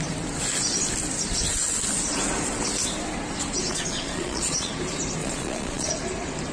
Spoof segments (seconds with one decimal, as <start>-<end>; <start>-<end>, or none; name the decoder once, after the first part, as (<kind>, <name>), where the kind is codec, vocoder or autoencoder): 3.7-4.7 (vocoder, Vocos); 5.2-5.9